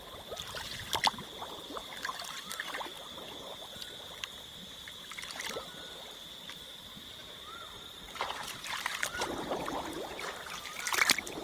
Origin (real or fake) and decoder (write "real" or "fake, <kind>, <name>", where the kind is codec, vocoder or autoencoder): fake, vocoder, BigVGAN v2